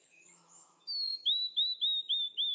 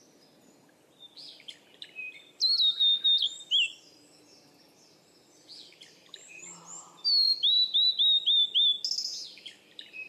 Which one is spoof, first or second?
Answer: first